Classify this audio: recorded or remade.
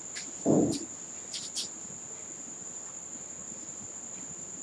remade